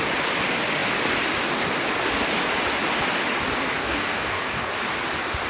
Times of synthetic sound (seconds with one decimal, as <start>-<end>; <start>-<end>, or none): 3.8-4.7